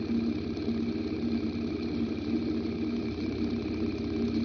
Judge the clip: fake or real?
real